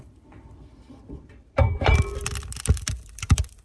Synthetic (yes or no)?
yes